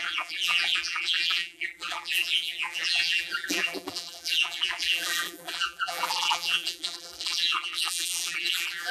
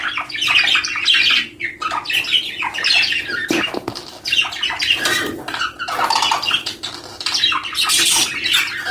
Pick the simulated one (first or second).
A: first